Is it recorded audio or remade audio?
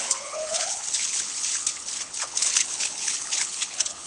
remade